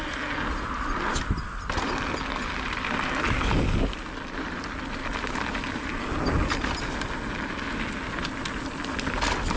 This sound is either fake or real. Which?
real